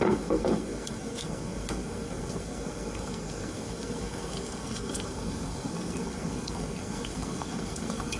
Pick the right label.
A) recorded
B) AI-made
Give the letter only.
B